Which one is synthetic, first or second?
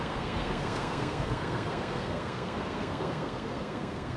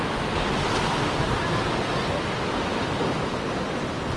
first